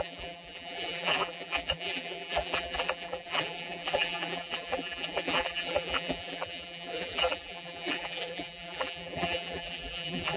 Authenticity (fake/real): fake